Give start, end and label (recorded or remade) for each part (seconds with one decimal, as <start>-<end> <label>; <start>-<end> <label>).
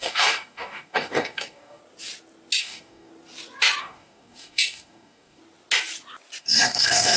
0.0-1.8 remade; 1.8-2.6 recorded; 2.6-3.1 remade; 3.1-3.8 recorded; 3.8-5.4 remade; 5.4-6.4 recorded; 6.4-7.2 remade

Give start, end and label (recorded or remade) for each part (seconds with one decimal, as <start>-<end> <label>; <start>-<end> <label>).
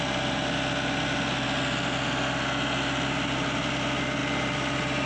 0.0-5.1 recorded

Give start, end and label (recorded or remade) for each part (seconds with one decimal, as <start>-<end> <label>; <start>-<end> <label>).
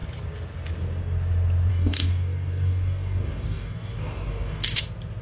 0.0-1.7 recorded; 1.7-4.8 remade; 4.8-5.2 recorded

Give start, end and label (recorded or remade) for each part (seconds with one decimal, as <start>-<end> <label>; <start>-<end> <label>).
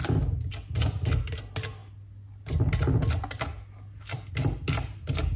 0.0-5.4 recorded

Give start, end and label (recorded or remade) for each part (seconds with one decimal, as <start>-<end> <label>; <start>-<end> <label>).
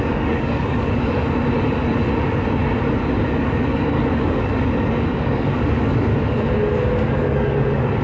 0.0-1.2 remade; 1.2-3.3 recorded; 3.3-6.1 remade; 6.1-7.1 recorded; 7.1-8.0 remade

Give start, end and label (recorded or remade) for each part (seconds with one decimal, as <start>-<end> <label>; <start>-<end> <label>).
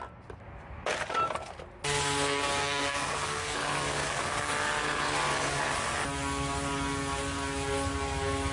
0.0-2.9 recorded; 2.9-4.5 remade; 4.5-8.5 recorded